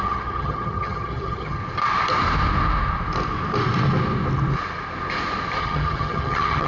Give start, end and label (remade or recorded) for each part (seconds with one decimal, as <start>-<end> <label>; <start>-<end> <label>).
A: 0.0-1.6 remade; 1.6-5.6 recorded; 5.6-6.7 remade